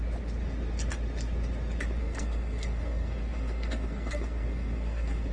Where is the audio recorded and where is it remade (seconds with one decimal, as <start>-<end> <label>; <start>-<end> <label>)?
0.0-2.0 recorded; 2.0-5.3 remade